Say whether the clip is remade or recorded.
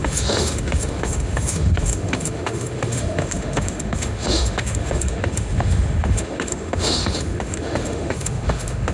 remade